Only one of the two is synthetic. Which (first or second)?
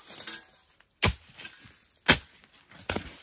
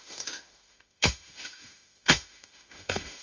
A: second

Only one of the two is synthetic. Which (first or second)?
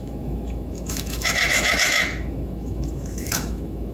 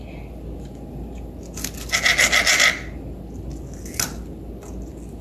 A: first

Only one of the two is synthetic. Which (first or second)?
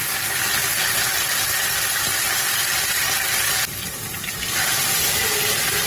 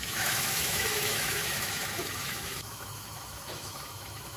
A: second